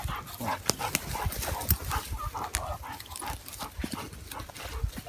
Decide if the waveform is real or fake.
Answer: real